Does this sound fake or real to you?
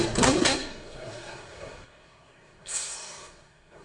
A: fake